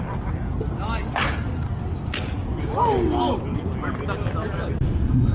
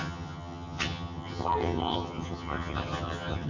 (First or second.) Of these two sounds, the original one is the first